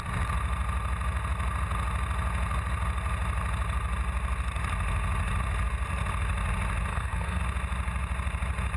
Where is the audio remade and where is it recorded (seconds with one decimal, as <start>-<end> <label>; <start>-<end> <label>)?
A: 0.0-6.9 recorded; 6.9-7.4 remade; 7.4-8.8 recorded